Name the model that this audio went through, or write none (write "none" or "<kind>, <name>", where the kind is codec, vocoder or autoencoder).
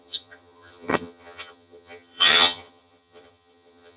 vocoder, HiFi-GAN